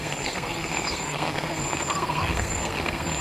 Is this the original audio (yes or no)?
no